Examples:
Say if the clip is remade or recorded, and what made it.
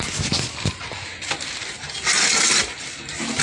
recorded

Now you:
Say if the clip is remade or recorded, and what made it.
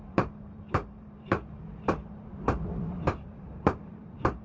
remade, vocoder, BigVGAN v2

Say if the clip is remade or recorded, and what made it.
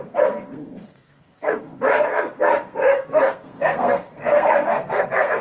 remade, codec, SNAC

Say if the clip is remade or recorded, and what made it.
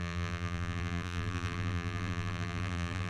remade, vocoder, BigVGAN v2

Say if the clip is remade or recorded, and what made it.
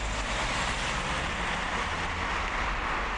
recorded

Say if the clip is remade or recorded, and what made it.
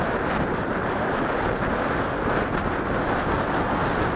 recorded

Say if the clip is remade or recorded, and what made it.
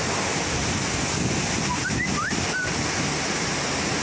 recorded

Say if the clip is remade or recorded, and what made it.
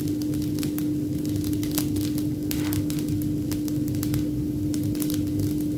recorded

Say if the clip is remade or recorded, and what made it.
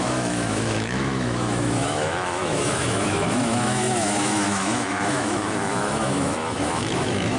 remade, autoencoder, DAC-VAE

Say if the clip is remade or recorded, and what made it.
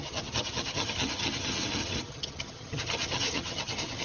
remade, vocoder, HiFi-GAN